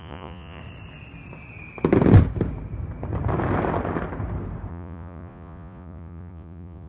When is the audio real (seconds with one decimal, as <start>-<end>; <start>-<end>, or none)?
0.6-4.7